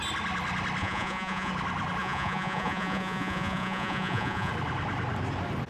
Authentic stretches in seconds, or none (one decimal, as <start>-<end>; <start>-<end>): 0.0-0.8; 1.5-2.0; 4.5-5.7